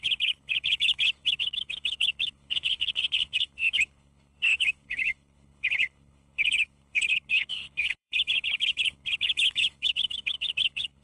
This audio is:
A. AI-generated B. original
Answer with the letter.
A